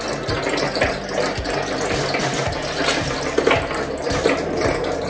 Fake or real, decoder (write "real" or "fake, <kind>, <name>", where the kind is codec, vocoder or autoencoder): real